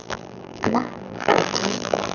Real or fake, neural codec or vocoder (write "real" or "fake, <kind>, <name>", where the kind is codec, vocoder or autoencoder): fake, vocoder, BigVGAN v2